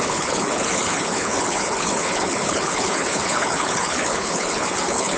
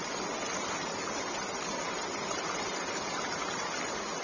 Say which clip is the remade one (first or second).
first